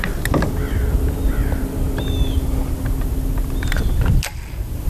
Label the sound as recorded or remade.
recorded